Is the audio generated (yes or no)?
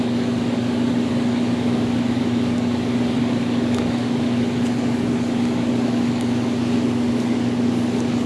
yes